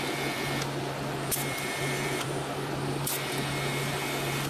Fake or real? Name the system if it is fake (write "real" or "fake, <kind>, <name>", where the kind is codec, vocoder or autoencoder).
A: real